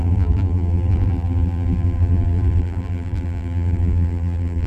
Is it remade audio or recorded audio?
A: remade